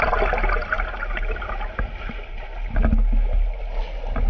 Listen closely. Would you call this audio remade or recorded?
recorded